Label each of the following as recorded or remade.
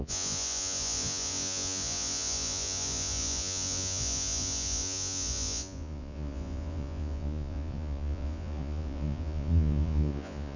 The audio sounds remade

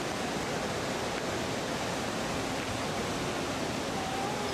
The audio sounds recorded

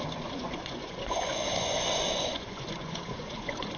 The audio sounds remade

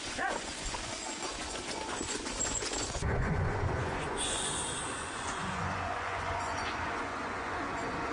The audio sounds remade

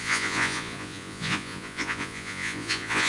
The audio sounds remade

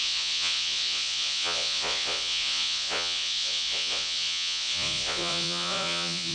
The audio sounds remade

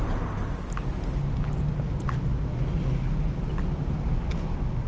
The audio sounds recorded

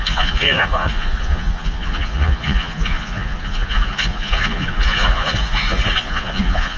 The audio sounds remade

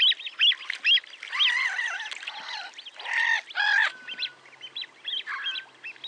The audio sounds recorded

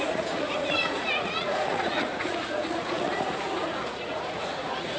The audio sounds remade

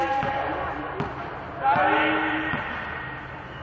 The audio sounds recorded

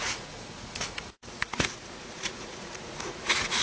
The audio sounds remade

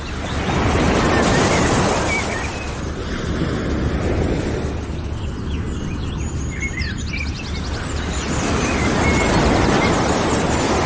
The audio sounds recorded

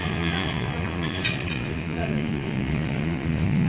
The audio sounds remade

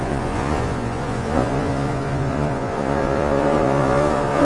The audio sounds remade